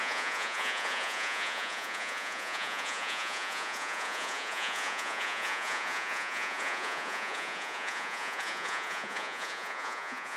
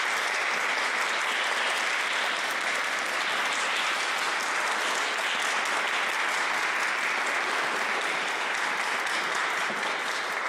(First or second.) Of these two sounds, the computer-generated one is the first